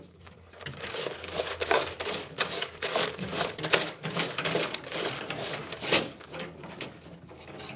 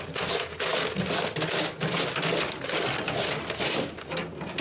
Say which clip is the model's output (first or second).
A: first